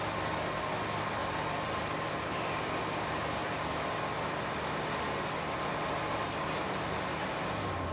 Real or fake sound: real